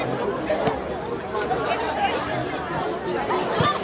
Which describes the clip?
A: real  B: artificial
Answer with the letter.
A